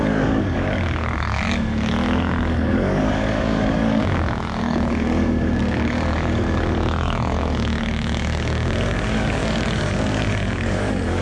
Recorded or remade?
remade